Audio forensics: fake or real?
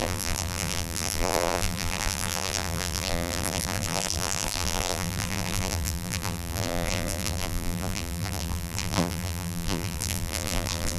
fake